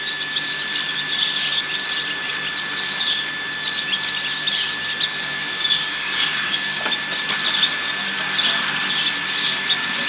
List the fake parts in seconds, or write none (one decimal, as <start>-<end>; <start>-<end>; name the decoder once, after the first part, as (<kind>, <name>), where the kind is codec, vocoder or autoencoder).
5.1-6.8 (codec, DAC)